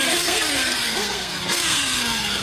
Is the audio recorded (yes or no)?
no